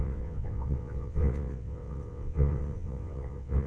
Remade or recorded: remade